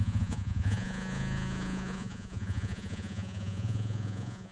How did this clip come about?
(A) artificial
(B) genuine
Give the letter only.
A